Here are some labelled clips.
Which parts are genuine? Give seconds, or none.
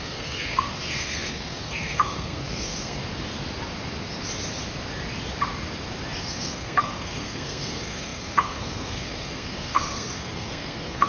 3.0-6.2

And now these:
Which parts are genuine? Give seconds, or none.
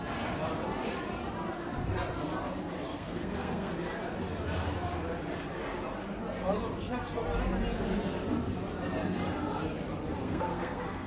0.0-2.9; 3.7-10.2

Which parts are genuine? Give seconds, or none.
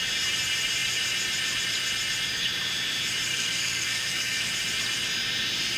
0.0-3.3; 4.5-5.8